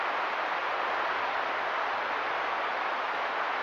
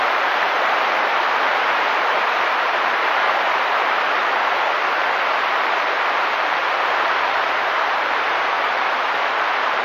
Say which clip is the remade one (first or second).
second